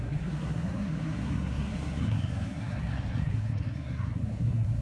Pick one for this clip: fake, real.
fake